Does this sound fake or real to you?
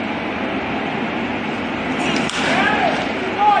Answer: real